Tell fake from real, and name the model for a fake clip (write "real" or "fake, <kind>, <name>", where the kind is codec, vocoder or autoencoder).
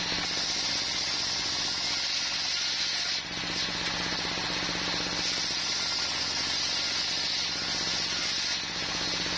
real